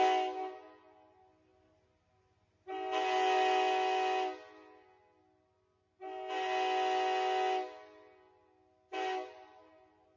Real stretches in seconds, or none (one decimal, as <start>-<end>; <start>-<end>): 0.0-10.2